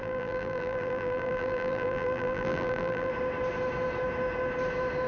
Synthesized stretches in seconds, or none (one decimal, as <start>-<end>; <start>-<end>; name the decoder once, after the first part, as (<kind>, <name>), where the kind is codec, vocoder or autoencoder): 0.0-3.1 (vocoder, BigVGAN v2)